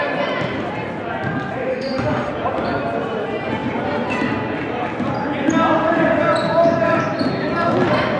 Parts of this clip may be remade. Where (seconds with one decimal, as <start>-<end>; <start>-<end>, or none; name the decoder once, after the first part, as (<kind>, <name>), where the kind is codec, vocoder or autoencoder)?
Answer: 1.7-2.3 (autoencoder, DAC-VAE)